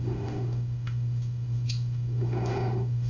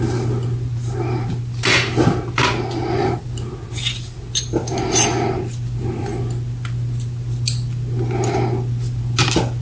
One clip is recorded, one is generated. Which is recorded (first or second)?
second